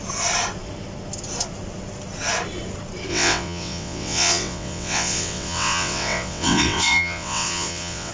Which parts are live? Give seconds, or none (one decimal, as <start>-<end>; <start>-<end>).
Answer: 0.0-3.1